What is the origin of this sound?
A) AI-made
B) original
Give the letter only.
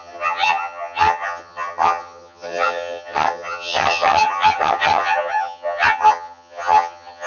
A